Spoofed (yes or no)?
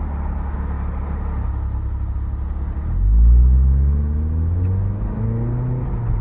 no